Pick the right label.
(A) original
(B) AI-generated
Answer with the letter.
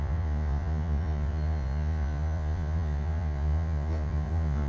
B